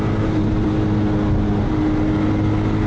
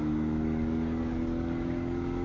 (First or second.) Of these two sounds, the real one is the first